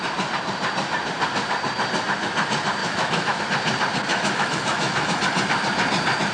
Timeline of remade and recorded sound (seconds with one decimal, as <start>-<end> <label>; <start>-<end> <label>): 0.0-2.8 recorded; 2.8-3.4 remade; 3.4-4.1 recorded; 4.1-5.2 remade; 5.2-6.3 recorded